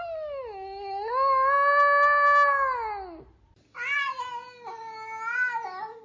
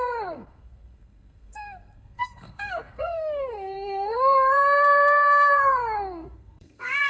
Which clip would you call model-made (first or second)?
second